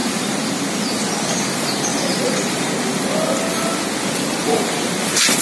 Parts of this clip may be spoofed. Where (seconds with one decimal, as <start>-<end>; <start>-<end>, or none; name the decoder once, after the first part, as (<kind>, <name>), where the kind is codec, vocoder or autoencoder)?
0.0-0.5 (vocoder, BigVGAN v2); 1.9-2.7; 4.4-5.4